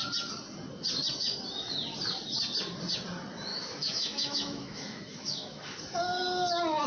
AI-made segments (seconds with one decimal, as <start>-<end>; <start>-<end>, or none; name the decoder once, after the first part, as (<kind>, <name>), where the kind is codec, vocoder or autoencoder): 3.5-5.8 (autoencoder, DAC-VAE)